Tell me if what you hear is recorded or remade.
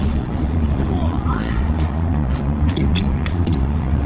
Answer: remade